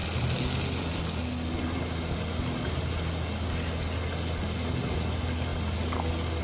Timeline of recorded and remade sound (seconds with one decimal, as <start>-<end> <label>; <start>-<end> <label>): 0.0-6.4 recorded